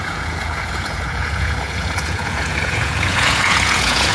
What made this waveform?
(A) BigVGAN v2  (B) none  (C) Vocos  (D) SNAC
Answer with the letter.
C